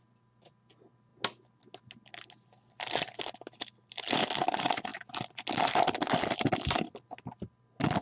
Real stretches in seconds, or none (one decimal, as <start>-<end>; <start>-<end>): 0.0-8.0